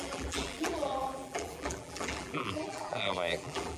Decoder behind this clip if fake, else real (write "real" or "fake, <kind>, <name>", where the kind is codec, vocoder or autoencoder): fake, vocoder, BigVGAN v2